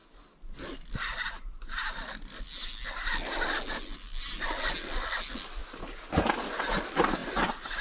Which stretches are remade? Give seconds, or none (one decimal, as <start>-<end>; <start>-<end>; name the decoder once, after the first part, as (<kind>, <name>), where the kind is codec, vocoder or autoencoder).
none